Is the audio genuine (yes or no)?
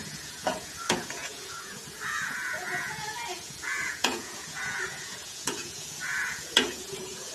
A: no